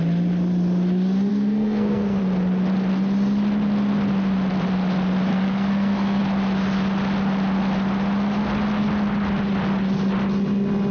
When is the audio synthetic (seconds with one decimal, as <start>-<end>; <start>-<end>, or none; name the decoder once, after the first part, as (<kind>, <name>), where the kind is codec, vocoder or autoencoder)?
1.3-2.2 (codec, SNAC); 5.3-6.2